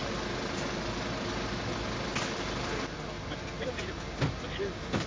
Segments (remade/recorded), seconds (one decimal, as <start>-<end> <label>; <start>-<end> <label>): 0.0-5.1 recorded